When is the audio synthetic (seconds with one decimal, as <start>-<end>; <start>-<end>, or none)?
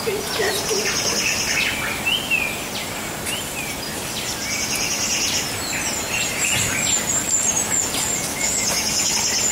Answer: 8.3-9.1